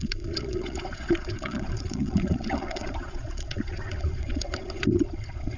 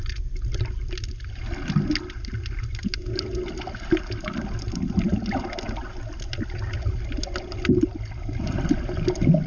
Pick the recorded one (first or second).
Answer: second